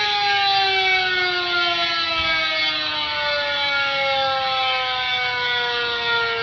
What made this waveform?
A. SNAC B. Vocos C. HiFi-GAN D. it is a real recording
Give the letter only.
D